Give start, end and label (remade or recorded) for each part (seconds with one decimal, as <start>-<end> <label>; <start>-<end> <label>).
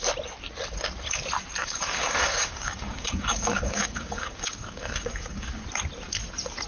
0.0-1.6 recorded; 1.6-5.6 remade; 5.6-6.7 recorded